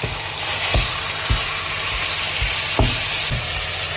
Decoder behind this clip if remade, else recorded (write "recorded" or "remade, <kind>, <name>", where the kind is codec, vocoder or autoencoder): recorded